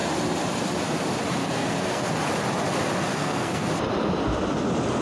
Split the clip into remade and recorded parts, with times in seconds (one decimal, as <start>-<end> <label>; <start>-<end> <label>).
0.0-1.4 recorded; 1.4-2.1 remade; 2.1-3.1 recorded; 3.1-3.7 remade; 3.7-5.0 recorded